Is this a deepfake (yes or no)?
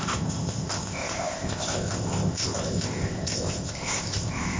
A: yes